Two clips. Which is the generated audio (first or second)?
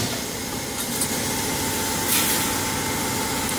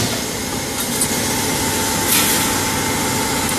first